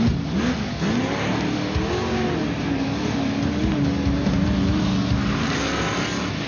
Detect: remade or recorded recorded